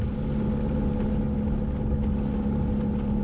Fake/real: real